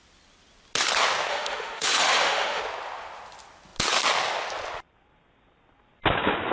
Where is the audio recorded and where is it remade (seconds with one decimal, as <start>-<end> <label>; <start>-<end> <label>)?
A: 0.0-1.3 recorded; 1.3-2.6 remade; 2.6-6.5 recorded